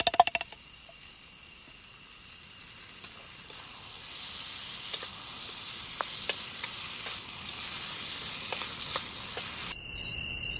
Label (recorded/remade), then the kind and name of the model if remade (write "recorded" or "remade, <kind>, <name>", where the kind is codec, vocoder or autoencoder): recorded